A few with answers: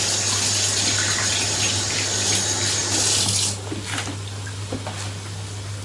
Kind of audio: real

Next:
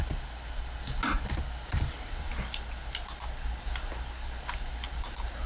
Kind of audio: real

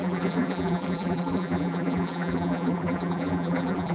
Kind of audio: fake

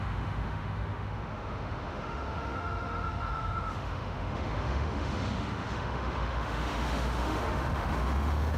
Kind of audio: fake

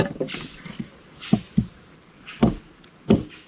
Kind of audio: real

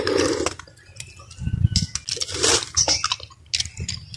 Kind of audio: real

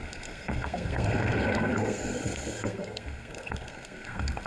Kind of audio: fake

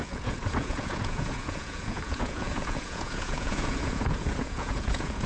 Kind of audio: fake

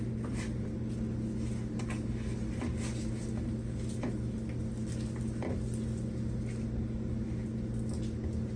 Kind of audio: real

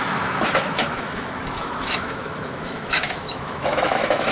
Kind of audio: fake